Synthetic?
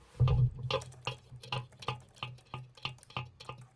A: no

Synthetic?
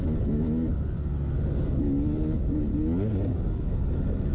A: no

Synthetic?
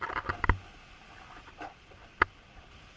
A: no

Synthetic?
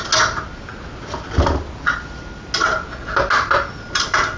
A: no